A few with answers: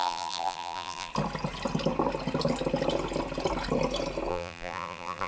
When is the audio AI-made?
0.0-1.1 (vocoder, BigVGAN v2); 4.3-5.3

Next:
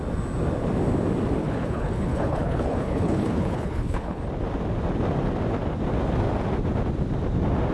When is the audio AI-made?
1.4-4.2 (codec, HILCodec)

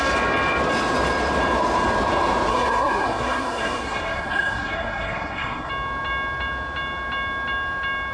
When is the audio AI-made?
2.5-5.7 (codec, SNAC)

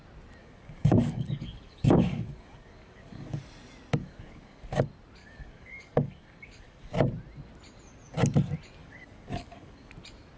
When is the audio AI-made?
0.4-3.4 (codec, DAC); 4.0-4.8; 5.2-6.9; 8.8-9.9